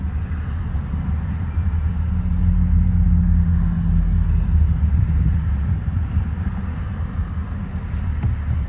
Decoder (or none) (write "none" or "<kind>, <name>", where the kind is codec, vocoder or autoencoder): none